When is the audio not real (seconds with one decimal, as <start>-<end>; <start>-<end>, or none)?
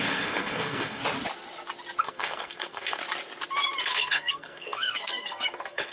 0.0-1.0; 2.0-3.0; 3.8-5.9